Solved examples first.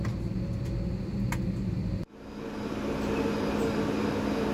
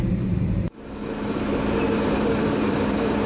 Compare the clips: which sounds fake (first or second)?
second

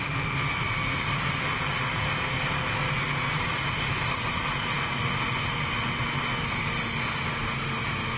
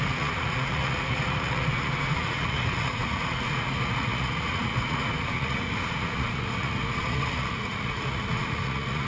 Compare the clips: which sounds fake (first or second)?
second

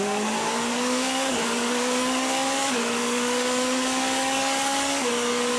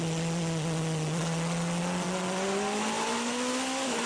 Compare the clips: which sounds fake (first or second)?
first